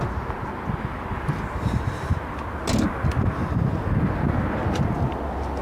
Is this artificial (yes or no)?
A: no